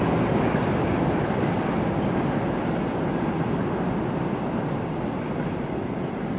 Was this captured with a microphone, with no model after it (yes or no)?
yes